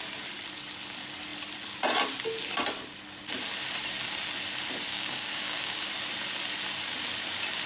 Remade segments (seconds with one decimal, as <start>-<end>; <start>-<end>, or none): 4.9-5.9